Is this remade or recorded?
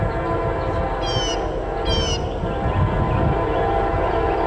recorded